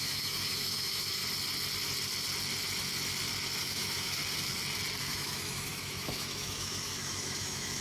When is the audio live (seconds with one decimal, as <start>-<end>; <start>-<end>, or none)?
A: 1.2-3.6; 4.2-5.0